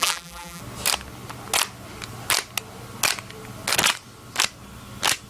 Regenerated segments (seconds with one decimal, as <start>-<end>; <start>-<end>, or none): 0.0-0.6